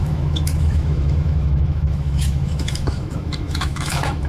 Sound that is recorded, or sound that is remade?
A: remade